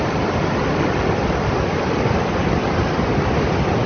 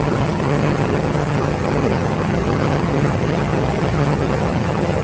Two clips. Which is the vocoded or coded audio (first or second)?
second